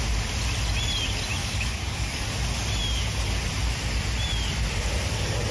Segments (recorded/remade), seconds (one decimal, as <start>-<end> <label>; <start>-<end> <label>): 0.0-1.4 recorded; 1.4-2.3 remade; 2.3-5.5 recorded